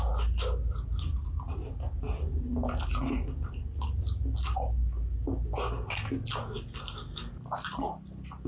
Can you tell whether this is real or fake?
real